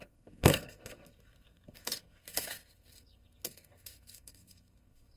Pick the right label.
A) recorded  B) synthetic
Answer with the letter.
B